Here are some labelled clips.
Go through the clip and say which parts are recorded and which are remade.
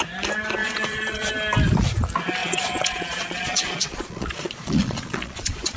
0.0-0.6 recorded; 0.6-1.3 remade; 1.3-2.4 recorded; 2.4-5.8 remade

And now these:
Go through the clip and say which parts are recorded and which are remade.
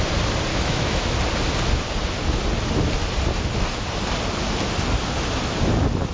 0.0-0.5 recorded; 0.5-1.1 remade; 1.1-6.1 recorded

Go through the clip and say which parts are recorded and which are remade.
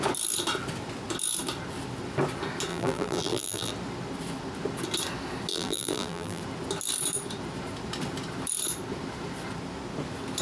0.0-2.7 recorded; 2.7-3.7 remade; 3.7-5.5 recorded; 5.5-6.4 remade; 6.4-10.4 recorded